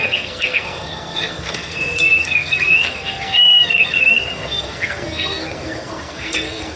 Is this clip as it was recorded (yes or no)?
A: no